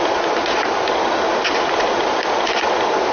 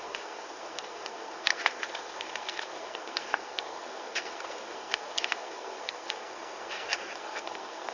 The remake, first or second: second